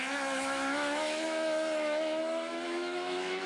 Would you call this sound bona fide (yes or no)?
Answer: no